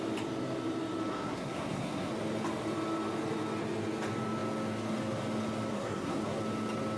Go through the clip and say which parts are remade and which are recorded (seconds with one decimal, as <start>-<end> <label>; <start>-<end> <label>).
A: 0.0-1.1 recorded; 1.1-2.1 remade; 2.1-5.7 recorded; 5.7-6.4 remade; 6.4-7.0 recorded